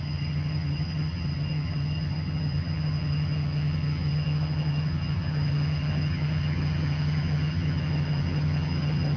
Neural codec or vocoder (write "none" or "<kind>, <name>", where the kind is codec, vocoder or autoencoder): vocoder, HiFi-GAN